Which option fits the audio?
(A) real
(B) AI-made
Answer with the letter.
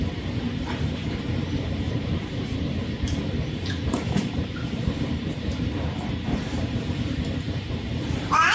B